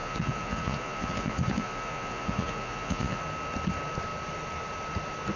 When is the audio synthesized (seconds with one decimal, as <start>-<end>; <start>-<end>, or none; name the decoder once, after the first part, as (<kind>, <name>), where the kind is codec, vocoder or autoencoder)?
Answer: 0.0-3.2 (vocoder, Vocos)

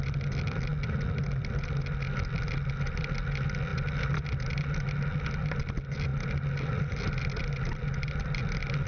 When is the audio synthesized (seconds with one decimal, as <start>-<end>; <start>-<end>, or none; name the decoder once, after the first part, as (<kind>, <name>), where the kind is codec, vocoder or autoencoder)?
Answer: none

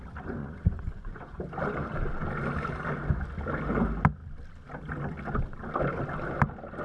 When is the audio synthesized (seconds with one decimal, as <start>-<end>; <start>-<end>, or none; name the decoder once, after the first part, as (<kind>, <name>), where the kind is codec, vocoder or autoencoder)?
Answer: 0.4-1.4 (vocoder, Vocos)

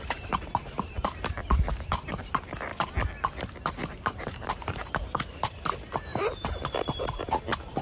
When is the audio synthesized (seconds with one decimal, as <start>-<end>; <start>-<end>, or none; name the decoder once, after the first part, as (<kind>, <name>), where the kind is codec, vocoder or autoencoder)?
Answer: 0.0-2.7 (vocoder, BigVGAN v2); 3.7-7.8

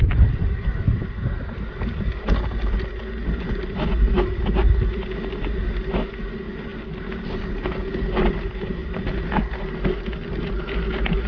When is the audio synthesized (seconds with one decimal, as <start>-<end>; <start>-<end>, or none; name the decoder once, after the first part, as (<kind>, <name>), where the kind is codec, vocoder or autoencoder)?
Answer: none